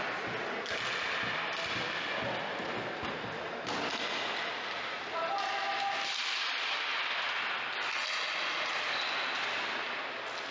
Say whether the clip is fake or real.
real